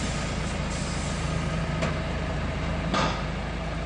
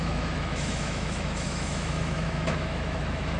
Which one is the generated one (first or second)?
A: second